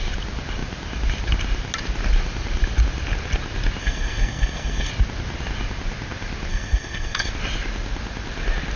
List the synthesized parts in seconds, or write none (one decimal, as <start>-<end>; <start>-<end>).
3.8-4.9; 6.5-7.3